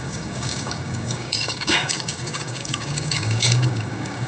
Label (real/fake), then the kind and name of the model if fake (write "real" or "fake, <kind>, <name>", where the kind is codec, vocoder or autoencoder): fake, codec, DAC